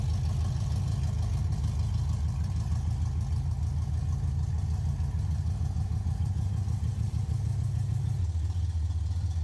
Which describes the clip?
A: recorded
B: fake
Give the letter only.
A